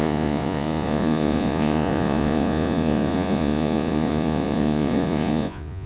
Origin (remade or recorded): remade